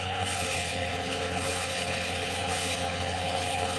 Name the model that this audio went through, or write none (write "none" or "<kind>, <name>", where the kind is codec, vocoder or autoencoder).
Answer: codec, HILCodec